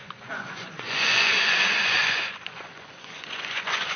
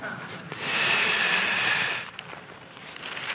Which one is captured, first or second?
second